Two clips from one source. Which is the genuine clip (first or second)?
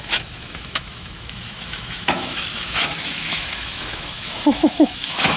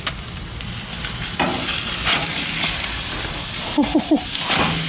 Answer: second